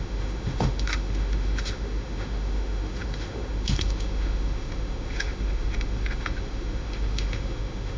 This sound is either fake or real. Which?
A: fake